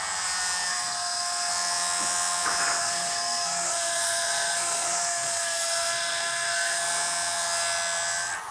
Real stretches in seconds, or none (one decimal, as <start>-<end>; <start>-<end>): 0.0-0.7; 1.5-2.8; 6.8-8.5

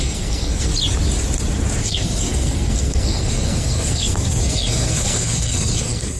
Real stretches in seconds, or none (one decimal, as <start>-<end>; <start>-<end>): 0.7-1.8

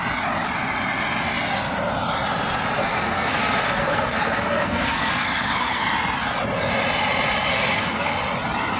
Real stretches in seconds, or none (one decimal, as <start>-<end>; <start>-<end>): 0.0-2.8; 5.9-7.5; 8.2-8.8

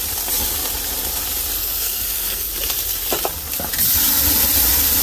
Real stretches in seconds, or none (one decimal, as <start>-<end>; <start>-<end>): 0.0-1.6; 2.5-5.0

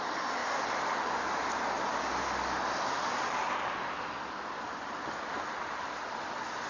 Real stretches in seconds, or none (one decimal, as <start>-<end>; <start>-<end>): 0.0-6.7

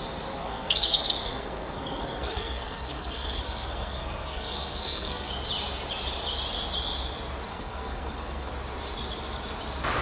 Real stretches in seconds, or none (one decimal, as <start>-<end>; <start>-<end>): 0.0-0.4; 5.3-7.5; 8.5-10.0

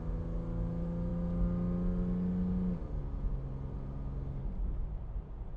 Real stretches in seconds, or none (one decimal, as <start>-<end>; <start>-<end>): 0.0-5.6